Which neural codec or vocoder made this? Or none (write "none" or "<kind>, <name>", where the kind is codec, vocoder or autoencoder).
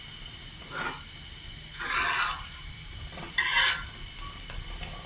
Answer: none